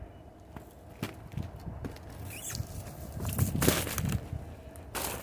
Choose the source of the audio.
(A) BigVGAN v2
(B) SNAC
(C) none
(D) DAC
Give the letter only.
C